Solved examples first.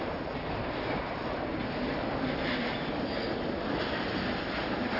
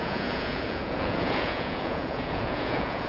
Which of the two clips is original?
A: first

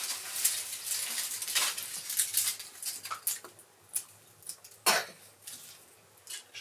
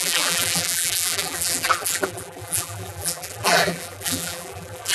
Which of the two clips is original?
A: first